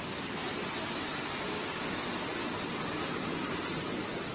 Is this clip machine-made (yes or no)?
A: no